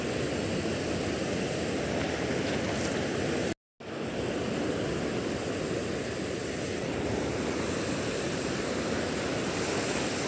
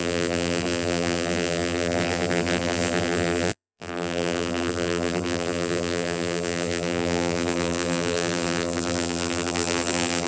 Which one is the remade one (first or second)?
second